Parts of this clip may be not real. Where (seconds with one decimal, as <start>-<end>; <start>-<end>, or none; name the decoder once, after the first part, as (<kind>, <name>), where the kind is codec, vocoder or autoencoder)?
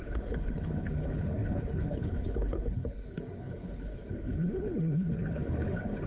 0.0-6.1 (codec, HILCodec)